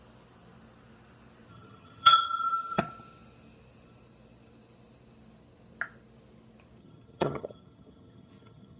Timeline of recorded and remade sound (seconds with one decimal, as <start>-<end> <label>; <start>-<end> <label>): 0.0-1.5 recorded; 1.5-2.8 remade; 2.8-6.8 recorded; 6.8-8.8 remade